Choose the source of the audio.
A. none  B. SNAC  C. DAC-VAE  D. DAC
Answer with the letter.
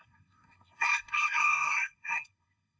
B